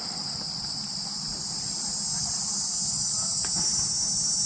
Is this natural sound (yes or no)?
no